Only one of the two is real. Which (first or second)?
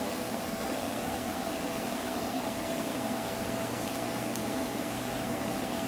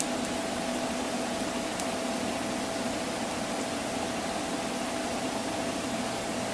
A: second